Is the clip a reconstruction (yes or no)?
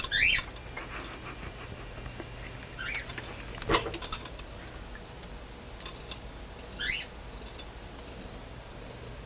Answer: no